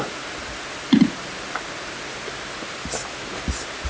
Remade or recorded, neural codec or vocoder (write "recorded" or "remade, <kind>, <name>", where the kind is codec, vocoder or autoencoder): recorded